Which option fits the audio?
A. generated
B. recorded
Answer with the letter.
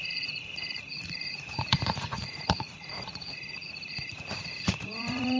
A